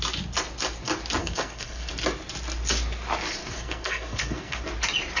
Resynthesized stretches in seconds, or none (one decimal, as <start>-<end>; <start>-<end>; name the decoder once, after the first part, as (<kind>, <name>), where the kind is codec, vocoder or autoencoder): 1.2-1.9 (codec, SNAC); 3.4-4.6